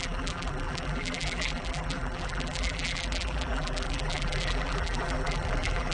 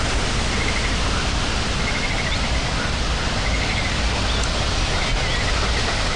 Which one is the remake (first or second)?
first